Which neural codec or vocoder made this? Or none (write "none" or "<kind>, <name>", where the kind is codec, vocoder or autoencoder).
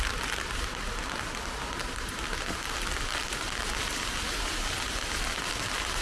none